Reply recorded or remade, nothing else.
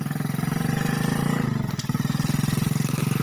recorded